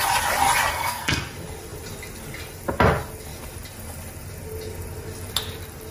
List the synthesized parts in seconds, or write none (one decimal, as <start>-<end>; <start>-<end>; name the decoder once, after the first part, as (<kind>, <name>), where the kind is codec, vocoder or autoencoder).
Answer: 0.7-1.2 (codec, SNAC)

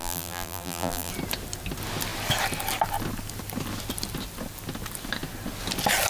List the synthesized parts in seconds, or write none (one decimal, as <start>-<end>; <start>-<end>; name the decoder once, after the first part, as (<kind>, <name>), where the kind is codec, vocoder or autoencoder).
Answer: 0.0-1.1 (vocoder, BigVGAN v2)